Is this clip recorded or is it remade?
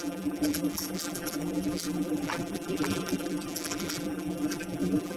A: remade